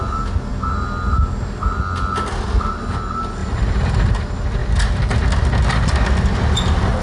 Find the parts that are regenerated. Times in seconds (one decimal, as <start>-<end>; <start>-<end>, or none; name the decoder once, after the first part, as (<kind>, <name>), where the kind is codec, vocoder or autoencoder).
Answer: 3.4-4.1 (vocoder, BigVGAN v2); 4.6-5.8